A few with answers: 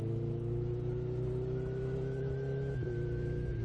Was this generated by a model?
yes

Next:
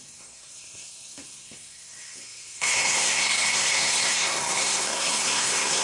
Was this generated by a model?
yes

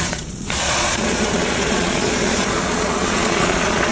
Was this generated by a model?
yes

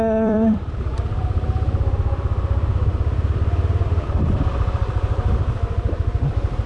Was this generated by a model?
yes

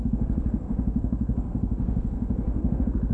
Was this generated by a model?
yes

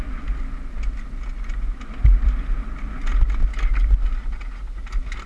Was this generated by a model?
no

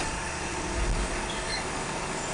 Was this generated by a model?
yes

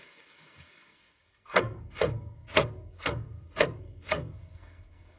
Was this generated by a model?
yes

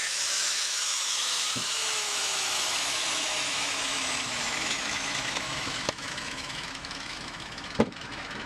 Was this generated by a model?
yes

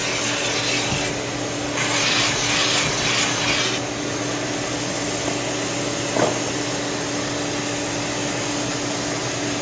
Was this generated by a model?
no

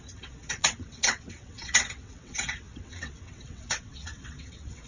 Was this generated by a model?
yes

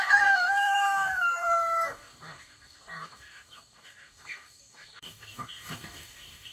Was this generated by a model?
yes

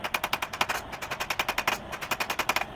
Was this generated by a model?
no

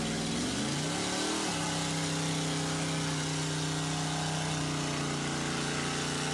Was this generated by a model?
no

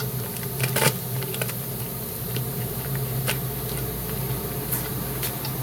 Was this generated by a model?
yes